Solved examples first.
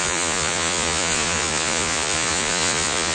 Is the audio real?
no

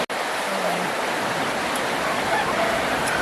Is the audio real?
yes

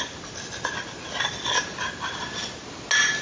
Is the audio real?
yes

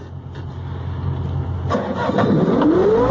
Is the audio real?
yes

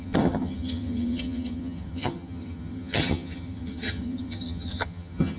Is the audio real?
no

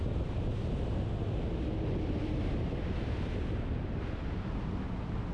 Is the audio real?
yes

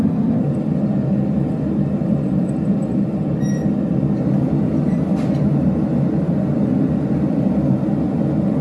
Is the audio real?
no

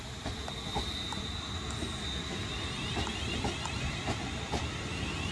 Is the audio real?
yes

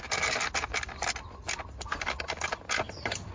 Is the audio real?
yes